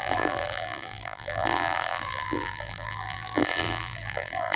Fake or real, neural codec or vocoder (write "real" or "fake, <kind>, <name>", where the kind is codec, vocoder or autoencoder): fake, vocoder, BigVGAN v2